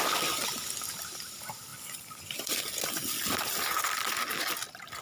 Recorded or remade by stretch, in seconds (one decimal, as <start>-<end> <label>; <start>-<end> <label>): 0.0-5.0 recorded